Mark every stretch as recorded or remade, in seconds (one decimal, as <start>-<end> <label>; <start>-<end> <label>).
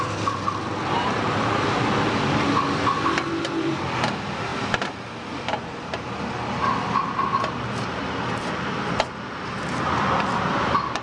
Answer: 0.0-11.0 recorded